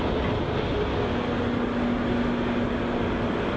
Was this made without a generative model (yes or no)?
yes